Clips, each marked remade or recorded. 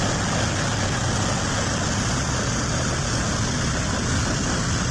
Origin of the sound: recorded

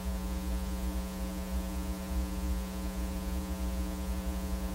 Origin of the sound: remade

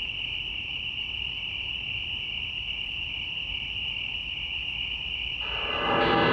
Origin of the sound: recorded